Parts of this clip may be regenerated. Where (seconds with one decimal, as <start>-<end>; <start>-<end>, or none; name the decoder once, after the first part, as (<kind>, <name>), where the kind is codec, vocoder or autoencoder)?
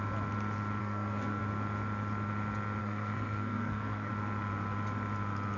0.8-1.4 (codec, SNAC); 2.8-4.1